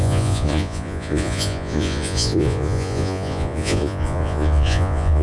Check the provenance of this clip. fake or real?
fake